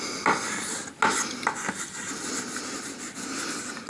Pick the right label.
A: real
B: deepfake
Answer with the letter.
A